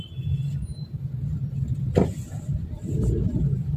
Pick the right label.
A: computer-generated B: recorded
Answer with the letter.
B